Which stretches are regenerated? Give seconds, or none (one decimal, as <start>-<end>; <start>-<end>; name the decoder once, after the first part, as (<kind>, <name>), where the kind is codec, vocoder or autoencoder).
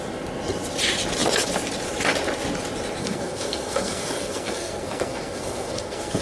3.0-6.2 (codec, SNAC)